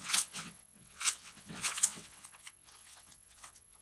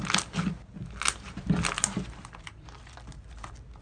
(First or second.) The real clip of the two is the second